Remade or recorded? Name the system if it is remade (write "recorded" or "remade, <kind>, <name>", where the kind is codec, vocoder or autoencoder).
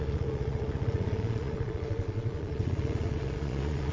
remade, vocoder, Vocos